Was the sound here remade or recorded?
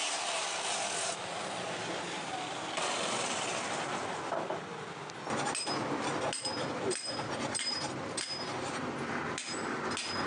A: recorded